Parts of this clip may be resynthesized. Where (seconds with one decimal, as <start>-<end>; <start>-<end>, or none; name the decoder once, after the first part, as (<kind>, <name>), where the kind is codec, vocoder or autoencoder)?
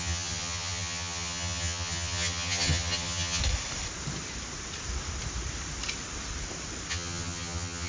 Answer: 0.0-3.4 (vocoder, HiFi-GAN); 6.9-7.9